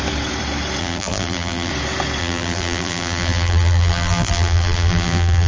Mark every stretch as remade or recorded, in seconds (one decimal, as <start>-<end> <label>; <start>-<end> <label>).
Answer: 0.0-0.8 recorded; 0.8-1.7 remade; 1.7-2.2 recorded; 2.2-5.5 remade